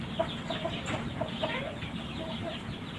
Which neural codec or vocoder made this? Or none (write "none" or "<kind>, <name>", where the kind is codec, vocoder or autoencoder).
vocoder, BigVGAN v2